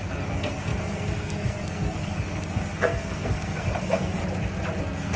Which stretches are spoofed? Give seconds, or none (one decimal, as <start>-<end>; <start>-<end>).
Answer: 0.0-4.2; 4.8-5.2